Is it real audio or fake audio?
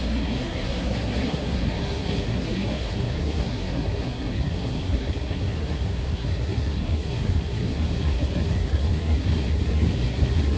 fake